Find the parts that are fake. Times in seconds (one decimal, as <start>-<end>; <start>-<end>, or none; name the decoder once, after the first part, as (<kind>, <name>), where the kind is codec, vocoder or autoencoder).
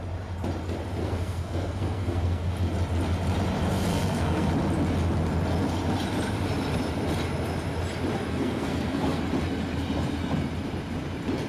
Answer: 1.0-2.5 (codec, SNAC); 3.9-4.5; 8.3-9.2